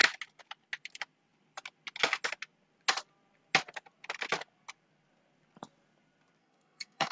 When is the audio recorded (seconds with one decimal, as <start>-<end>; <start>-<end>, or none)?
0.0-6.4

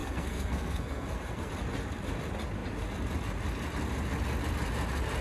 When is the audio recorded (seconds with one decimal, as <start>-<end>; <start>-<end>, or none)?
1.5-5.2

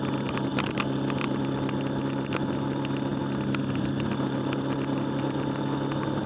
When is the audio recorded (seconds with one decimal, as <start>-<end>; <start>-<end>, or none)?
0.0-6.3